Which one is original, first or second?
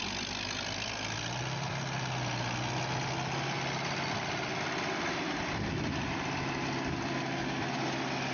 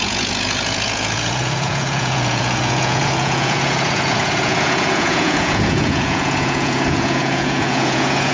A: first